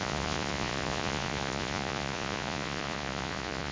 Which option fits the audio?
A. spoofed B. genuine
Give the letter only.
A